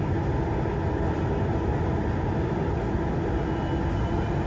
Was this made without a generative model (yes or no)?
yes